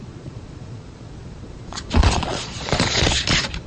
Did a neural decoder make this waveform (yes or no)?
yes